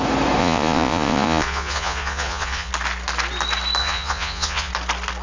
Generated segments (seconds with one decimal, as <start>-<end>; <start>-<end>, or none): 0.4-2.7; 3.8-4.7

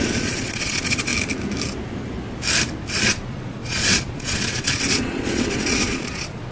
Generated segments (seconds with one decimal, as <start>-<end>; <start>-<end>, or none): 0.0-1.1; 2.9-6.5

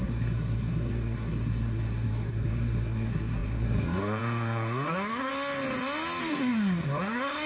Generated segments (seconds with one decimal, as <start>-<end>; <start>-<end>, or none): 0.0-5.3; 6.3-7.5

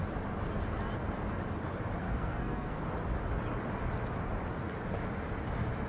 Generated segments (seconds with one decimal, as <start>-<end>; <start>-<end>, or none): 2.0-2.8

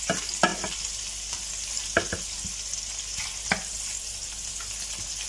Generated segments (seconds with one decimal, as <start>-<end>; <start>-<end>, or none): none

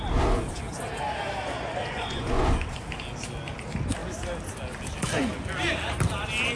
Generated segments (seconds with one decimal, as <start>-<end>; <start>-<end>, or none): 1.8-2.8

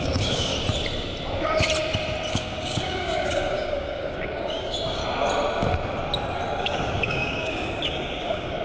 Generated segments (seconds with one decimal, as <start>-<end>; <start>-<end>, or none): 0.0-0.5; 2.3-5.0; 6.6-8.6

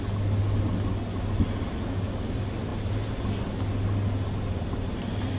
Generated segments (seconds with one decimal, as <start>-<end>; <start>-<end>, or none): none